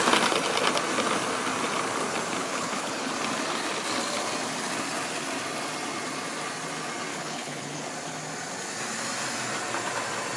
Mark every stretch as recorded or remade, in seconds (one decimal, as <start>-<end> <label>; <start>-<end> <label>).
0.0-2.4 recorded; 2.4-3.1 remade; 3.1-7.1 recorded; 7.1-7.9 remade; 7.9-10.4 recorded